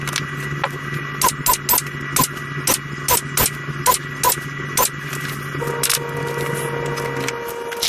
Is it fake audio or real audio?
real